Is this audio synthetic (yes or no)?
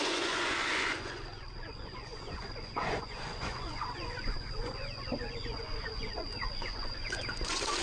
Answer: yes